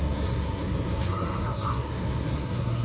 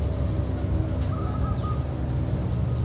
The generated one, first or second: first